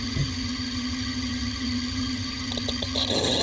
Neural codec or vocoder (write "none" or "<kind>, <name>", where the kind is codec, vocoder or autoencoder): vocoder, HiFi-GAN